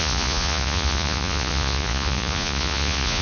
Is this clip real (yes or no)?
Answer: no